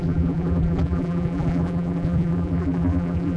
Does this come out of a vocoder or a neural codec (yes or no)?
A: yes